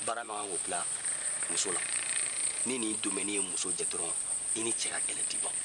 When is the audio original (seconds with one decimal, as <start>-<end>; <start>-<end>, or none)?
2.4-3.8